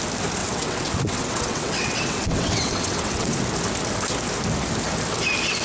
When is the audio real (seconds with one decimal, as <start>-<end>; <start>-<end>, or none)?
0.0-0.4; 3.4-5.6